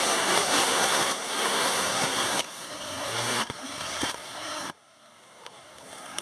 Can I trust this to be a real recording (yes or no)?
no